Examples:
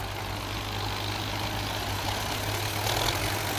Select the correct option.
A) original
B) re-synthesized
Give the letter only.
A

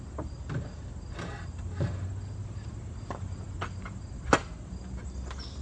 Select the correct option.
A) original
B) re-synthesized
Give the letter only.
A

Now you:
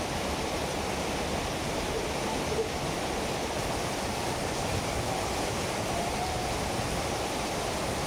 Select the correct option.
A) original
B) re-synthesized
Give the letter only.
B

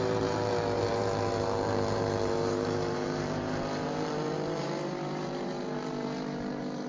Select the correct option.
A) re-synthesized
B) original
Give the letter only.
A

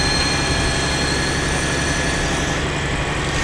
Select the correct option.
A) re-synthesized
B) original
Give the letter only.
B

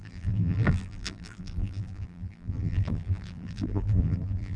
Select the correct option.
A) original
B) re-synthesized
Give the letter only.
B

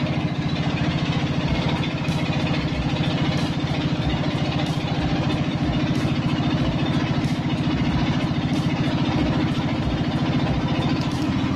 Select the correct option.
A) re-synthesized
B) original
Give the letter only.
B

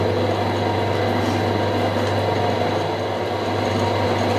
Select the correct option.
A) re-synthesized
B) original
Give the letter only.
B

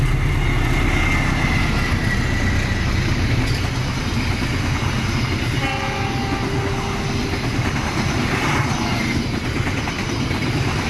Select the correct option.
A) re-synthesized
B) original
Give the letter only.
B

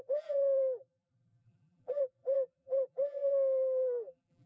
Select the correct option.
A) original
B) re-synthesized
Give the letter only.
B